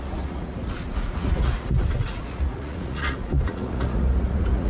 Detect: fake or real fake